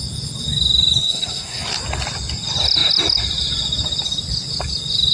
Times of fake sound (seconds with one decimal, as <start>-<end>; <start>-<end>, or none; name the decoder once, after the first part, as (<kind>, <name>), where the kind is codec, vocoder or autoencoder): 1.0-1.6 (codec, SNAC)